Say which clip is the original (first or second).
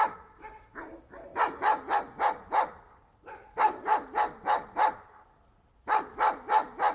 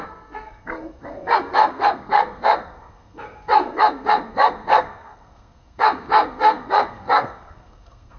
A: first